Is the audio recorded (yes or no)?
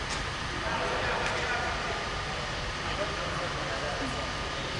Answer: yes